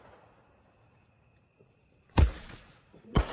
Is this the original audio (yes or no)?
no